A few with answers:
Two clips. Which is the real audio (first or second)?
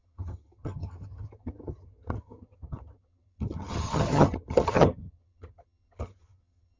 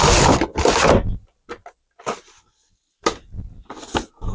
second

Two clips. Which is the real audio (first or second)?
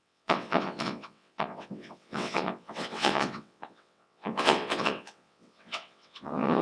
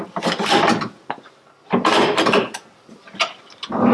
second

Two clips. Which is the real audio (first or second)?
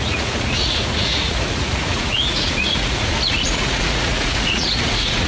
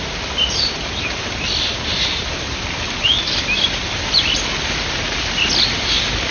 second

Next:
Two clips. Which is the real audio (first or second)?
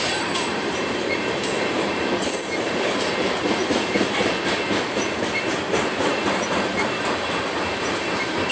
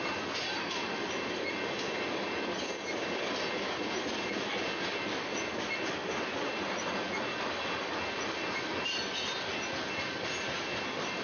second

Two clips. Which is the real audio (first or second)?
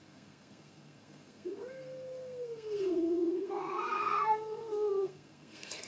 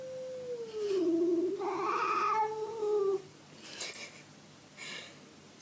second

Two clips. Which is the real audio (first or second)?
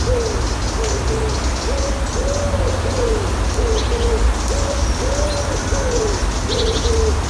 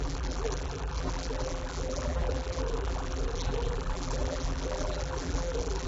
first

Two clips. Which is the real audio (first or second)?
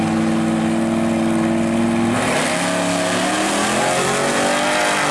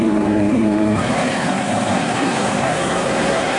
first